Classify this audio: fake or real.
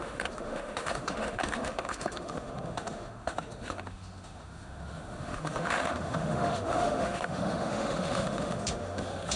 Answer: fake